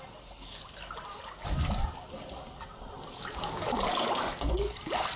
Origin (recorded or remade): recorded